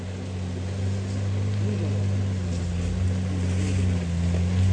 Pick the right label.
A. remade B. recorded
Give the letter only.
B